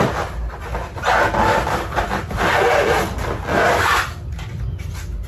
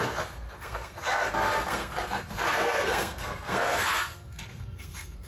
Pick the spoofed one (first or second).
second